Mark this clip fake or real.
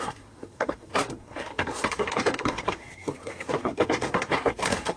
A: fake